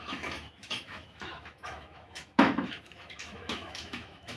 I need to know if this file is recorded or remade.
remade